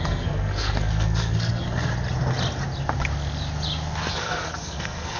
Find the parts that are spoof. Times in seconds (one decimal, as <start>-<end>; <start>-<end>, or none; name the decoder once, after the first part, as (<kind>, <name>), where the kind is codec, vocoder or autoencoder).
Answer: 0.0-1.9 (codec, SNAC); 4.1-5.2